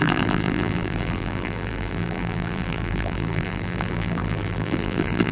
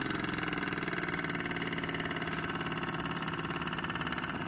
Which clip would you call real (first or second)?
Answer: second